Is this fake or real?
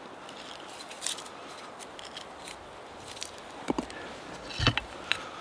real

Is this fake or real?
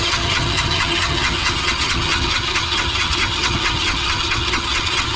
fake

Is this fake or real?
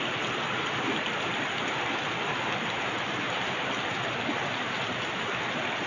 real